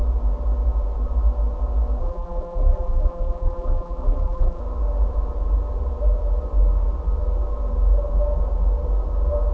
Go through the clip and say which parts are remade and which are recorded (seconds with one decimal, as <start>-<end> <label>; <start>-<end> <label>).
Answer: 0.0-2.0 recorded; 2.0-4.6 remade; 4.6-9.5 recorded